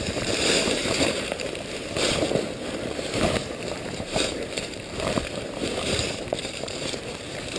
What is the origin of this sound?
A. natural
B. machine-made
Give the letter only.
B